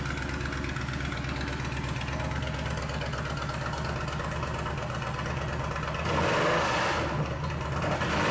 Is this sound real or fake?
real